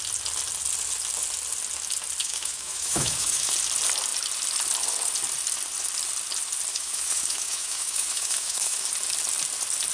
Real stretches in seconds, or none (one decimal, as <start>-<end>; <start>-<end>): 0.0-2.2; 3.5-6.7; 8.9-9.9